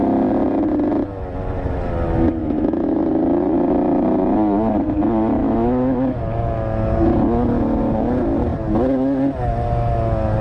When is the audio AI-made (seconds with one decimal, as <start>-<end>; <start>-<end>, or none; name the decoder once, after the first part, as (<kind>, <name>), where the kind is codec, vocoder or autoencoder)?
2.4-3.0 (autoencoder, DAC-VAE); 5.4-6.2